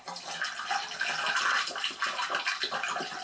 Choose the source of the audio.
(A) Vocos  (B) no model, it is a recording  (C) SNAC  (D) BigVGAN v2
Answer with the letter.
B